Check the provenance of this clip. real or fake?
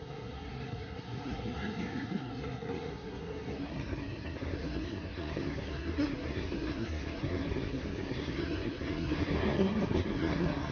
fake